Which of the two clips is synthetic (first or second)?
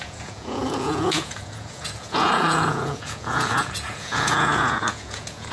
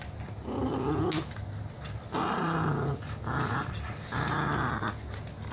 first